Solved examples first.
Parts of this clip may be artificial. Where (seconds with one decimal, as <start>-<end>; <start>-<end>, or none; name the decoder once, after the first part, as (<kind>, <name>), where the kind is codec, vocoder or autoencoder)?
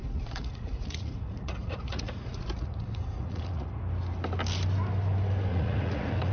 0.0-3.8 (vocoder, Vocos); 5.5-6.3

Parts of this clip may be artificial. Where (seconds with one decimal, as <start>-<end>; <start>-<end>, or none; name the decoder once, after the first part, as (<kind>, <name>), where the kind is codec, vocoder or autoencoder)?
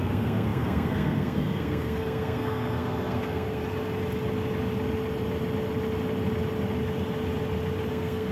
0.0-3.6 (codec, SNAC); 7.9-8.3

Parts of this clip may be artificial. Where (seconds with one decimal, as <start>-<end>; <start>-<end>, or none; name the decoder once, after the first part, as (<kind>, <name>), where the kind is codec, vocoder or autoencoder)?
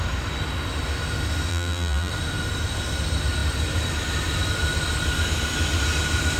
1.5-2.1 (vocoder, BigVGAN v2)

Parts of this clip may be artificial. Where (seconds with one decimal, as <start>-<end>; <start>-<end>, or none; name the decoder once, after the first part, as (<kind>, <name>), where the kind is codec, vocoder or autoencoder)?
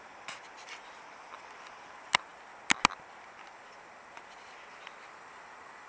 none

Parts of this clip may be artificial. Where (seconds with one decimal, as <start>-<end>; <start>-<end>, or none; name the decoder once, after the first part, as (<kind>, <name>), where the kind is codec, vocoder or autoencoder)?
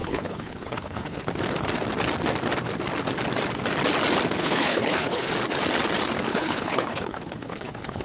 0.0-1.3 (codec, HILCodec); 4.4-5.3; 6.3-8.0